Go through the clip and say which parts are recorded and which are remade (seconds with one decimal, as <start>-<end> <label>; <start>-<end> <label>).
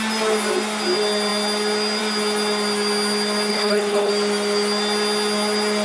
0.0-3.5 recorded; 3.5-4.1 remade; 4.1-5.8 recorded